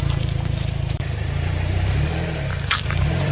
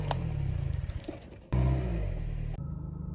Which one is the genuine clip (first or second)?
second